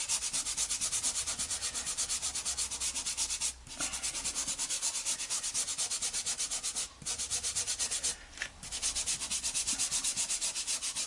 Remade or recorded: recorded